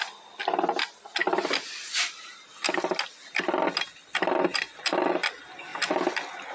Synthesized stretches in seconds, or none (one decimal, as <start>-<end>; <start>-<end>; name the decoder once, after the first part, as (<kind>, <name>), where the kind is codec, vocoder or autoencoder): none